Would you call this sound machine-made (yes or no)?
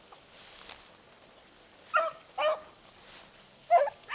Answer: no